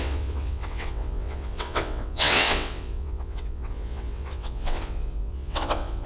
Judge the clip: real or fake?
fake